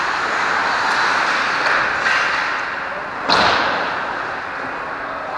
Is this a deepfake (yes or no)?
no